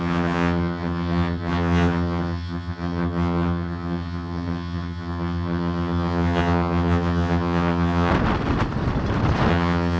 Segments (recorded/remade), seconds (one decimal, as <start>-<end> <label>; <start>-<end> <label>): 0.0-8.1 remade; 8.1-9.5 recorded; 9.5-10.0 remade